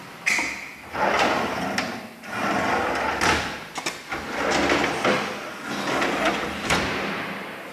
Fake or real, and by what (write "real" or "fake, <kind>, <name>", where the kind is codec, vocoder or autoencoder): real